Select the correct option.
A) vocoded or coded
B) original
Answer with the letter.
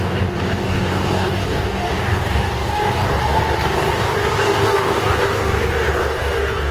A